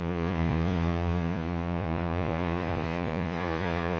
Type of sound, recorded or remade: remade